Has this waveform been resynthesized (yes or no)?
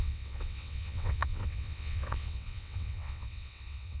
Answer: yes